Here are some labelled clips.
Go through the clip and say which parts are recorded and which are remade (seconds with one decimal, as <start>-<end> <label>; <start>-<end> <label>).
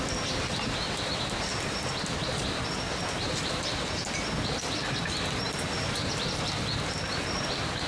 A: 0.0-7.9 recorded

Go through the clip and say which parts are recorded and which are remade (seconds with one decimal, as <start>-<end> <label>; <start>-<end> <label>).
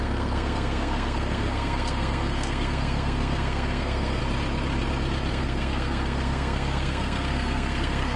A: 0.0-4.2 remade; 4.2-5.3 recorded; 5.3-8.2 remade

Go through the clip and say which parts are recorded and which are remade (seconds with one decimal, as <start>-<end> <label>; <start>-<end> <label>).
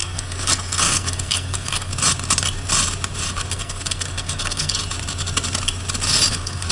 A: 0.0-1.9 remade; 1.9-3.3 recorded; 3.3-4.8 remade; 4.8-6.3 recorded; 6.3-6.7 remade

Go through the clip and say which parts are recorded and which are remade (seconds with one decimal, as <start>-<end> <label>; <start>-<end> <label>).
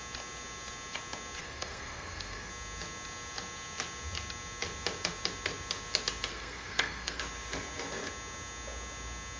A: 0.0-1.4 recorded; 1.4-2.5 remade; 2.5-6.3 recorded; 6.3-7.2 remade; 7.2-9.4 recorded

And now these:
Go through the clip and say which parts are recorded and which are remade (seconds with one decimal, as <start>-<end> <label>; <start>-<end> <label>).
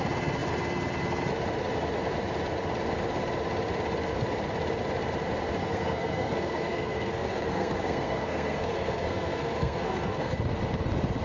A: 0.0-5.6 recorded; 5.6-10.4 remade; 10.4-11.2 recorded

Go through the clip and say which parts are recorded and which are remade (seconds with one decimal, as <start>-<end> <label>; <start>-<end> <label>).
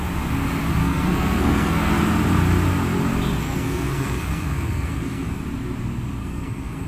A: 0.0-0.8 recorded; 0.8-2.0 remade; 2.0-3.4 recorded; 3.4-5.4 remade; 5.4-6.2 recorded; 6.2-6.9 remade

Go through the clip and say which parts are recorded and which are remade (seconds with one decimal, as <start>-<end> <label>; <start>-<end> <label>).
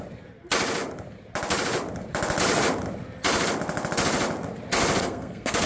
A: 0.0-5.0 recorded; 5.0-5.7 remade